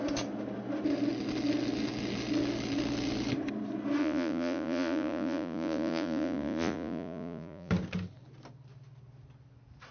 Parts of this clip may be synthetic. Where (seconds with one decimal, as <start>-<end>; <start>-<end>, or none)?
4.0-7.7